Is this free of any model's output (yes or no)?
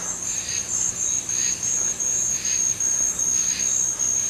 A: yes